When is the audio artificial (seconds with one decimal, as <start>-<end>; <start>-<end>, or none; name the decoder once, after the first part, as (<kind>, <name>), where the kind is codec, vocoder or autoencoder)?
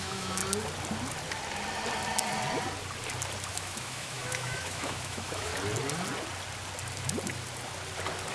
0.0-0.4 (autoencoder, DAC-VAE); 3.5-5.5